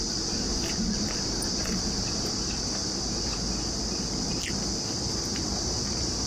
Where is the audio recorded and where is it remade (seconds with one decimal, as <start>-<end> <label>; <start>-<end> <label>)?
0.0-5.3 recorded; 5.3-6.3 remade